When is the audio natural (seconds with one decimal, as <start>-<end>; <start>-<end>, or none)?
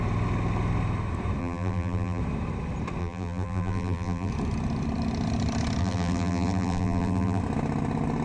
0.0-1.4; 2.2-3.0; 4.3-5.8; 7.4-8.2